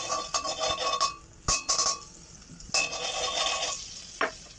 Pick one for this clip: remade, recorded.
recorded